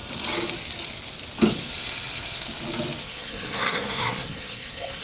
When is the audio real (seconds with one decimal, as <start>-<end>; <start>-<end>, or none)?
0.0-3.0